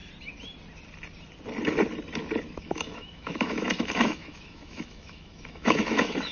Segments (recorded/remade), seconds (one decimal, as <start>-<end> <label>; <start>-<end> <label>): 0.0-2.6 recorded; 2.6-6.3 remade